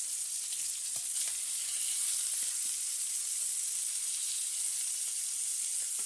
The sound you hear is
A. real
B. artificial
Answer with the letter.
A